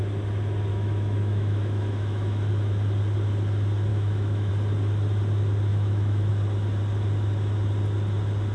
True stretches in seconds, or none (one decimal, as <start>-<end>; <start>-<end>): 0.0-0.7; 2.5-3.9; 4.5-5.7; 6.3-8.5